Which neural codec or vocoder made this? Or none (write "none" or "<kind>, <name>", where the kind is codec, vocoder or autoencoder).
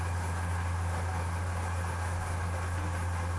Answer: none